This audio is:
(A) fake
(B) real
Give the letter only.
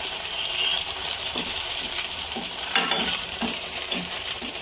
A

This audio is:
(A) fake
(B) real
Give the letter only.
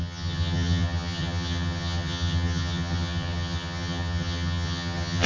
A